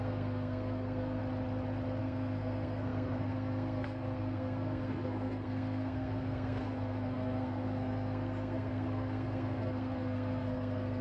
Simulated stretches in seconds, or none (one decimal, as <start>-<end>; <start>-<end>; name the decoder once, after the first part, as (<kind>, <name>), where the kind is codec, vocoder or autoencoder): 0.0-1.2 (codec, SNAC); 2.0-11.0